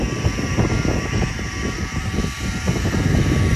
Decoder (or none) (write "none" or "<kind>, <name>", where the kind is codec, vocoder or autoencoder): none